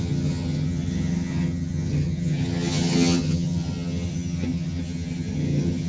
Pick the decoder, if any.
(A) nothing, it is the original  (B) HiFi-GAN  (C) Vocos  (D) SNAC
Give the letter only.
B